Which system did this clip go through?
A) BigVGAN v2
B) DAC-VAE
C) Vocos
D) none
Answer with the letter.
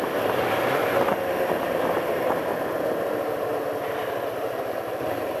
D